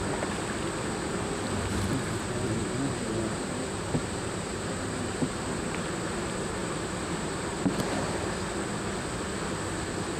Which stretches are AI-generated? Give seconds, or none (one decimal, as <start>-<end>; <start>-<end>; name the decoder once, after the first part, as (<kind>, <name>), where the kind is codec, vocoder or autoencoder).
2.6-5.5 (vocoder, BigVGAN v2); 6.6-7.8